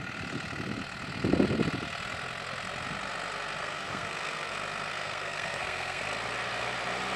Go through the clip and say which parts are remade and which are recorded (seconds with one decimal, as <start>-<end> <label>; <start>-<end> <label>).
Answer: 0.0-3.6 recorded; 3.6-4.5 remade; 4.5-4.9 recorded; 4.9-6.0 remade; 6.0-7.2 recorded